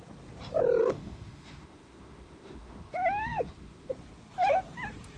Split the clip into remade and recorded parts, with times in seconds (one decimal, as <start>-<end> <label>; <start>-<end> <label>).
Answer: 0.0-0.8 recorded; 0.8-3.9 remade; 3.9-5.2 recorded